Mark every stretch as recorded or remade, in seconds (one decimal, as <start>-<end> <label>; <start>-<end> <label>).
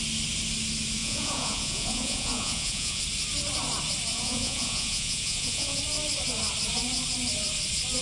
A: 0.0-1.0 recorded; 1.0-3.0 remade; 3.0-4.1 recorded; 4.1-5.8 remade; 5.8-8.0 recorded